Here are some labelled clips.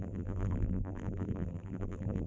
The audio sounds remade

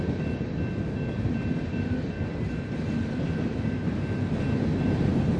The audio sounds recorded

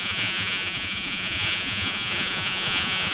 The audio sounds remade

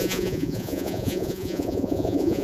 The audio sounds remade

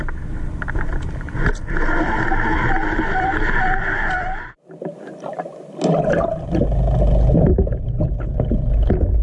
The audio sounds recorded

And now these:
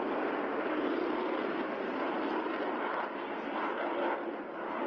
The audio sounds recorded